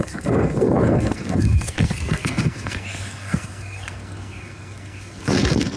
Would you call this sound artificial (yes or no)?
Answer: yes